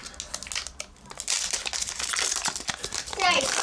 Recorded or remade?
recorded